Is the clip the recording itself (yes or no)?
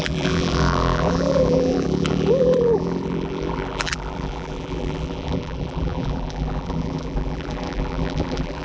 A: no